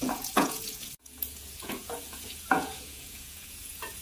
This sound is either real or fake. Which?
fake